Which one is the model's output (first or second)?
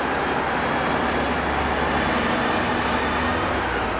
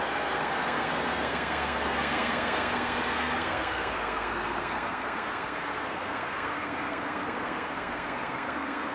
second